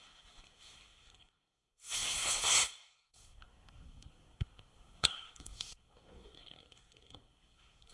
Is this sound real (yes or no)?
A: no